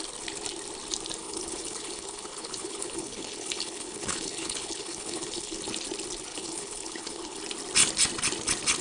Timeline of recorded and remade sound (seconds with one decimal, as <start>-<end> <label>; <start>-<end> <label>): 0.0-1.2 recorded; 1.2-5.6 remade; 5.6-6.3 recorded; 6.3-7.4 remade; 7.4-8.8 recorded